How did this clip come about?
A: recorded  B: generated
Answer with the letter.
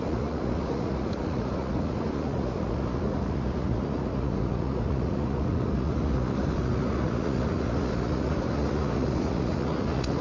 B